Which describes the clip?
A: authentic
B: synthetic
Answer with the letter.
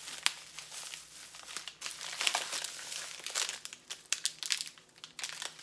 A